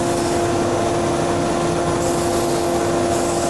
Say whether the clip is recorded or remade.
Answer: recorded